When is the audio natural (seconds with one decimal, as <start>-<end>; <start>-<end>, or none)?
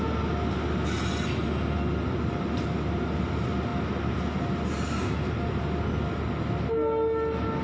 0.0-7.6